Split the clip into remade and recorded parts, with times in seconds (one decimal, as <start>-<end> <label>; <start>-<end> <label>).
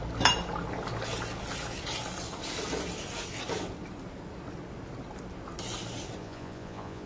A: 0.0-6.2 recorded; 6.2-7.1 remade